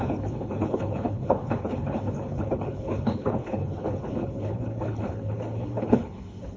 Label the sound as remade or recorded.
remade